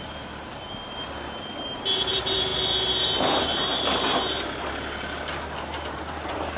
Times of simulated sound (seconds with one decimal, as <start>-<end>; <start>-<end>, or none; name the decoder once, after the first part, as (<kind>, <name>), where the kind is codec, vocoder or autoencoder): none